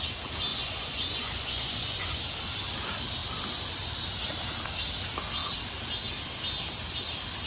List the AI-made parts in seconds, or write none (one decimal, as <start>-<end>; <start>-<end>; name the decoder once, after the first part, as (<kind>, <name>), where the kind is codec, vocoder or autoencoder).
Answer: 0.5-2.2 (vocoder, Vocos)